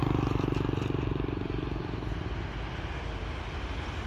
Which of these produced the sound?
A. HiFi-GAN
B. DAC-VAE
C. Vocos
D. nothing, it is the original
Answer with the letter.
D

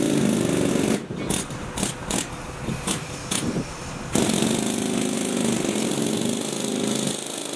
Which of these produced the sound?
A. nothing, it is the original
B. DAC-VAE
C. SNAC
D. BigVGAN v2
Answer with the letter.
A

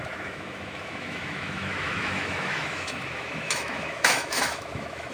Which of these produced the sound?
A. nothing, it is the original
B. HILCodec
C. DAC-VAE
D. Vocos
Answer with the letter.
C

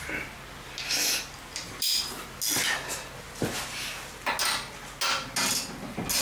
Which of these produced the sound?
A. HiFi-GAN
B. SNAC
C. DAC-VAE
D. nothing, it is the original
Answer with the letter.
D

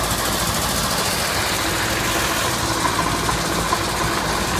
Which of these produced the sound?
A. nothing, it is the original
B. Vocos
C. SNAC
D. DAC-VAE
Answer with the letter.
A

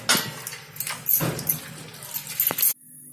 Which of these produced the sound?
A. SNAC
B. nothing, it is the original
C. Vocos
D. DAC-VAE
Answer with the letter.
B